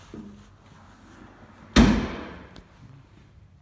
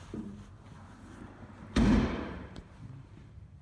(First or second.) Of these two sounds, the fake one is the second